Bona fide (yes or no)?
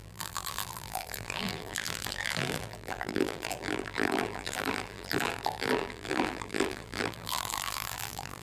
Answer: no